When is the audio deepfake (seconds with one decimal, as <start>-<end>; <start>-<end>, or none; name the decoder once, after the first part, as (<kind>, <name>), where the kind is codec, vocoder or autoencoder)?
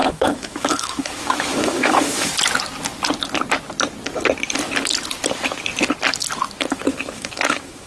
0.0-2.3 (autoencoder, DAC-VAE); 6.7-7.9